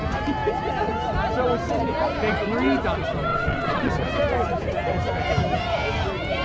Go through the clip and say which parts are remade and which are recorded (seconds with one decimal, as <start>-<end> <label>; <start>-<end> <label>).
0.0-3.3 recorded; 3.3-3.9 remade; 3.9-6.4 recorded